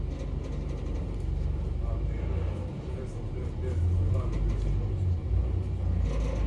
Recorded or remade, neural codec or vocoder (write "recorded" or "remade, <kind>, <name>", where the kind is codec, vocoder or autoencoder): recorded